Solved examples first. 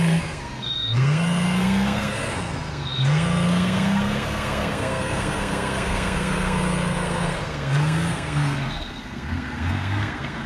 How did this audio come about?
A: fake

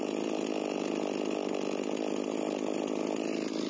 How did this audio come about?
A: real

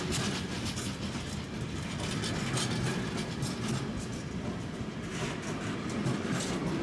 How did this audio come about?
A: real